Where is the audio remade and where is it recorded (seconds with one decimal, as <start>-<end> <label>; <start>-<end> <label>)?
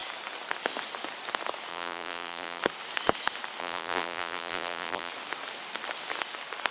0.0-1.7 recorded; 1.7-2.6 remade; 2.6-3.6 recorded; 3.6-5.1 remade; 5.1-6.7 recorded